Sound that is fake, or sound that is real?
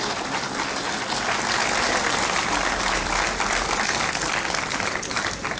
real